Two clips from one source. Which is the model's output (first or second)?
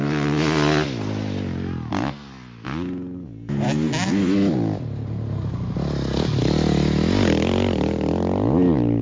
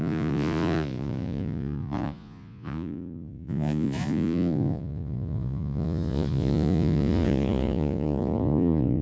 second